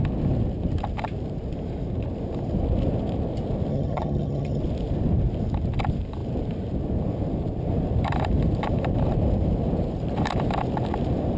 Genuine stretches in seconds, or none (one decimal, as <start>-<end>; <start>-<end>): 0.0-3.7; 4.6-11.4